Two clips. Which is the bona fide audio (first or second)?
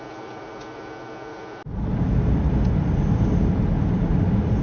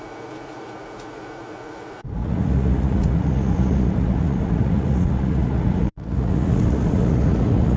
first